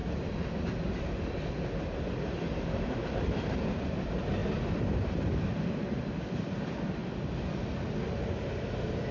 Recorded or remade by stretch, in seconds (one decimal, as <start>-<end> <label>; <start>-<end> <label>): 0.0-1.5 remade; 1.5-4.4 recorded; 4.4-6.3 remade; 6.3-9.1 recorded